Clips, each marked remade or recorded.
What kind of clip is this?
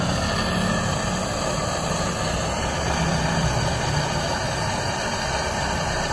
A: recorded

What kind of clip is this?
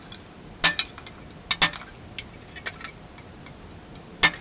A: recorded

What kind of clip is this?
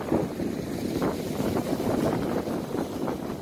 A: recorded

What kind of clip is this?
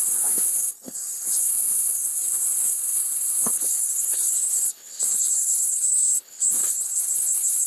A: remade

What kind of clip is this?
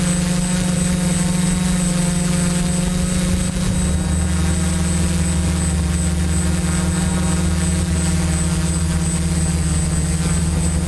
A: recorded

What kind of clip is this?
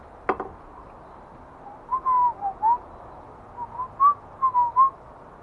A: recorded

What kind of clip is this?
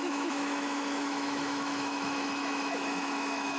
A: remade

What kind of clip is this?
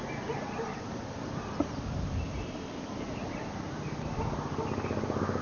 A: recorded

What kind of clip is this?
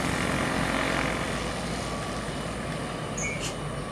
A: recorded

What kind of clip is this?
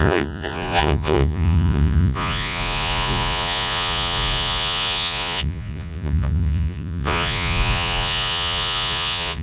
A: remade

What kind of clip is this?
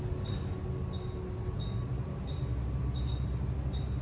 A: recorded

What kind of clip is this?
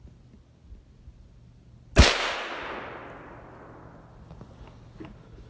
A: recorded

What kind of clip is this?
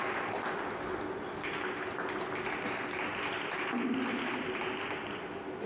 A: recorded